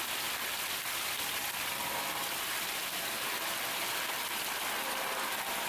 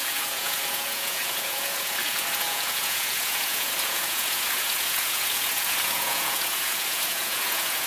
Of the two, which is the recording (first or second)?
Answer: first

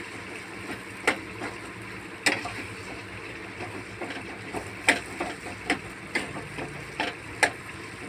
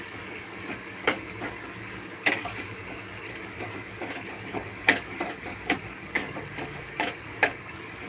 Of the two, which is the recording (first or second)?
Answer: first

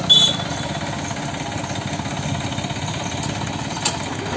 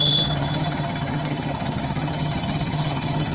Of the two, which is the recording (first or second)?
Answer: first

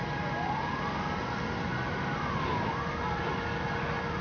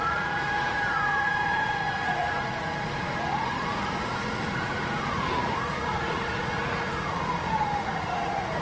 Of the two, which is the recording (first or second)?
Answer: first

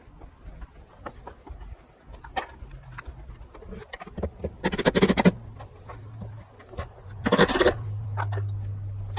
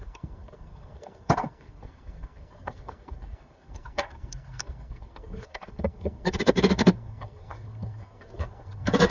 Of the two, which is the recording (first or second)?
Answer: first